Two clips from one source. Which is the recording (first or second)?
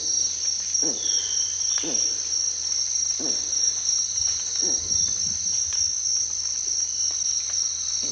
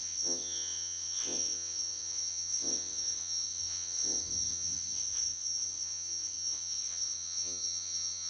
first